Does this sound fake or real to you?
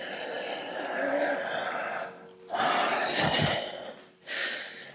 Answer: real